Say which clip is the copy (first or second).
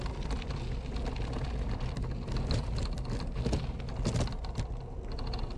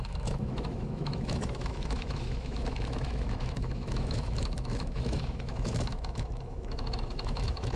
second